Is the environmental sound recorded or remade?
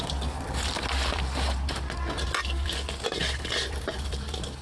recorded